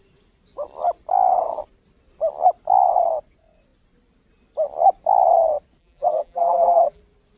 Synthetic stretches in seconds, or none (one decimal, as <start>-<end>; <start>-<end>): 5.8-7.0

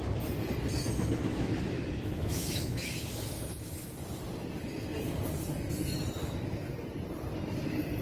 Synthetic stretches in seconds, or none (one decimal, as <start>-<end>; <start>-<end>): 1.3-4.2; 6.2-6.8

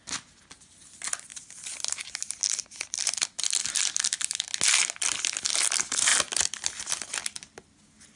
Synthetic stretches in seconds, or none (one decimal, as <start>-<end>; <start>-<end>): none

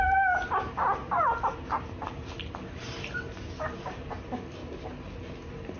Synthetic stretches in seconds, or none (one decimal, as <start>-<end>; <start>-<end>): none

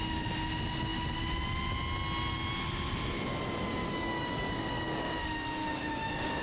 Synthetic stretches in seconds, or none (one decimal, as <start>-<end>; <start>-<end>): 3.8-6.4

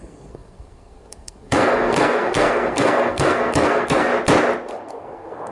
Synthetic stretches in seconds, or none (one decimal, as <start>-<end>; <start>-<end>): 0.0-4.1; 4.7-5.5

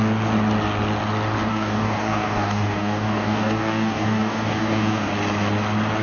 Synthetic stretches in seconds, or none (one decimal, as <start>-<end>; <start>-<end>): 1.5-5.1

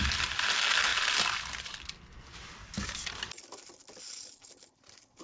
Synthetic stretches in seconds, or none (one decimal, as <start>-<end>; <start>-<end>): none